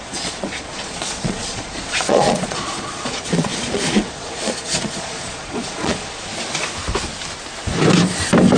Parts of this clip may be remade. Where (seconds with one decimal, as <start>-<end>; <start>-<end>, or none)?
0.0-6.3